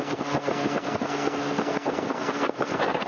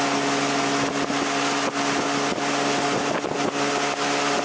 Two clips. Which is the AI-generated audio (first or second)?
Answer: first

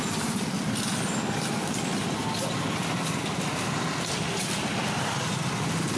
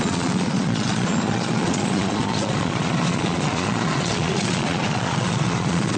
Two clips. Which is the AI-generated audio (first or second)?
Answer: second